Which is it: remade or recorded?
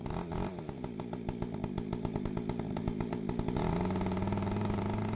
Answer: recorded